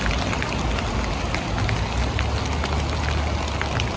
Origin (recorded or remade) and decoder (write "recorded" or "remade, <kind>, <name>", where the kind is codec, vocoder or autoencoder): recorded